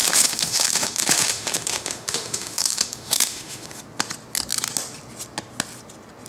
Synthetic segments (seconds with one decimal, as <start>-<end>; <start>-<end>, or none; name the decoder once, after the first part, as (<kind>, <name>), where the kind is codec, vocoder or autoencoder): 0.0-3.8 (autoencoder, DAC-VAE)